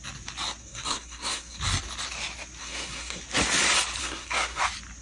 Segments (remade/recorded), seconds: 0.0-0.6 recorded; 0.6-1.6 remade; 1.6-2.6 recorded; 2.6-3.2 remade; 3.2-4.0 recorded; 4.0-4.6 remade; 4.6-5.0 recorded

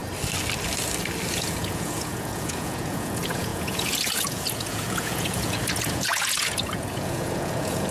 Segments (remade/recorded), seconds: 0.0-1.3 recorded; 1.3-7.9 remade

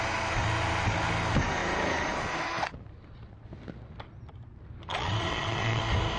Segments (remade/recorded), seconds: 0.0-4.9 recorded; 4.9-5.8 remade; 5.8-6.2 recorded

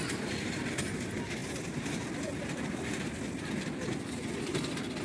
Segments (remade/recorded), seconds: 0.0-5.0 remade

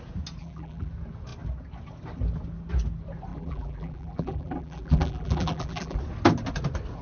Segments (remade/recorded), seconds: 0.0-0.4 recorded; 0.4-0.9 remade; 0.9-3.3 recorded; 3.3-6.0 remade; 6.0-7.0 recorded

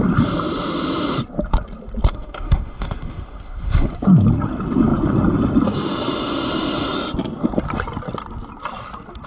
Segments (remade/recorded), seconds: 0.0-2.1 recorded; 2.1-3.9 remade; 3.9-9.3 recorded